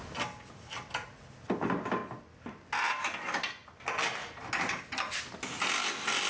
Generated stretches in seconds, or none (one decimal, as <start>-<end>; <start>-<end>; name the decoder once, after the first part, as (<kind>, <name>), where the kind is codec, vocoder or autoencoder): none